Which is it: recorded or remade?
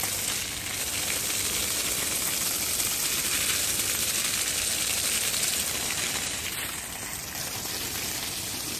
recorded